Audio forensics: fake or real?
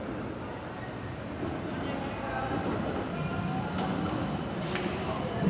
real